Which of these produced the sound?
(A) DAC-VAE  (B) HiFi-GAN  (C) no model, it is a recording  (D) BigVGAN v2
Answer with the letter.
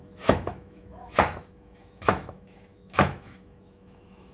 A